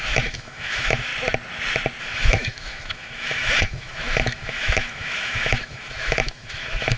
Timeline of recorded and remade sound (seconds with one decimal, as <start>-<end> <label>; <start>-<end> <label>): 0.0-1.1 remade; 1.1-2.0 recorded; 2.0-7.0 remade